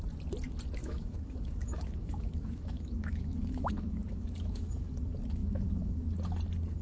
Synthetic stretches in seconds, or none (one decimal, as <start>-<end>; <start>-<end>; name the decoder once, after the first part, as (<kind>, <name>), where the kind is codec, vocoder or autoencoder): 0.8-4.9 (autoencoder, DAC-VAE); 5.4-6.0